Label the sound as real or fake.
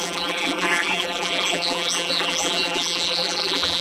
fake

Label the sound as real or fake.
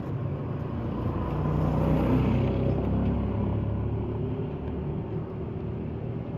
real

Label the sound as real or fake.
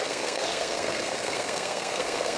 fake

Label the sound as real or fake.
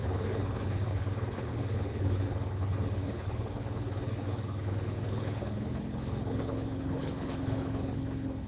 fake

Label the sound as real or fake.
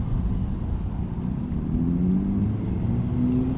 real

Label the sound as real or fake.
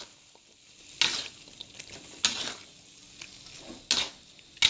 real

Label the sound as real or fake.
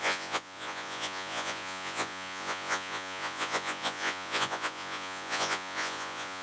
fake